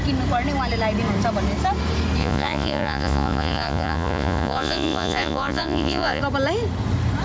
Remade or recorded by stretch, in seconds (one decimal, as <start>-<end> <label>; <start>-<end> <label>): 0.0-2.2 recorded; 2.2-6.2 remade; 6.2-7.2 recorded